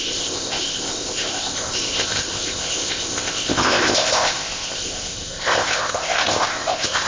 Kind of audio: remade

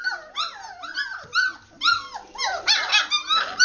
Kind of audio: recorded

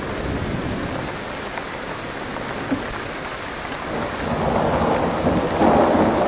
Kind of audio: recorded